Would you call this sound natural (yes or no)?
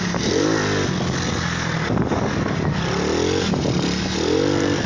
yes